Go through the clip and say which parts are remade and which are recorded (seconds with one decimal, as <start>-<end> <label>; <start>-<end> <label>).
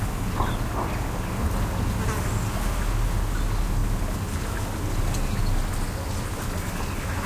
0.0-7.3 recorded